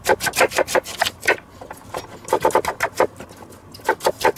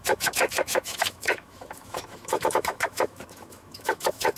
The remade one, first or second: second